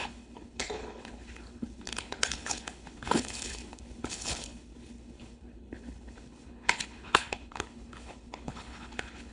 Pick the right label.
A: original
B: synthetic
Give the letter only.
B